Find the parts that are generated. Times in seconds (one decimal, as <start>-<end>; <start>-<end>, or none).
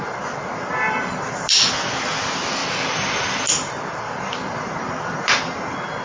none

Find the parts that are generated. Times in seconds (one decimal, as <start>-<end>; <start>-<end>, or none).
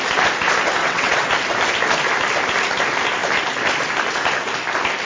0.8-1.3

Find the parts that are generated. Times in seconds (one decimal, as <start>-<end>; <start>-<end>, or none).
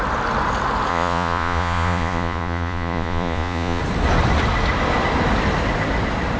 0.9-3.8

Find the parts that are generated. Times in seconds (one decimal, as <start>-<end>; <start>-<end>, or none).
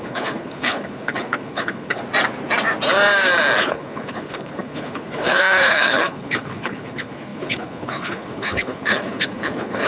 0.0-2.0; 3.6-9.9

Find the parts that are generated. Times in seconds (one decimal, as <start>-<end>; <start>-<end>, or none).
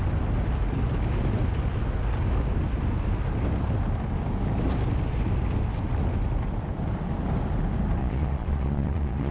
8.0-9.3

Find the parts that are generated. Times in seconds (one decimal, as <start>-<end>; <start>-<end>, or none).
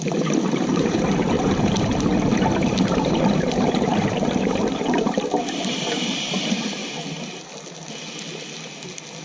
0.0-2.1; 2.7-6.8